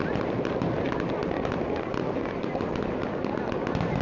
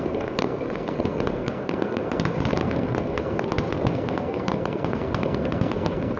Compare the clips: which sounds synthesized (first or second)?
second